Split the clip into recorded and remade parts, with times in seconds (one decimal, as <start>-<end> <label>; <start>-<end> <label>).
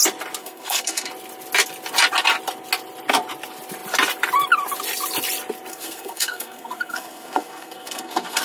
0.0-0.4 recorded; 0.4-1.1 remade; 1.1-5.7 recorded; 5.7-8.4 remade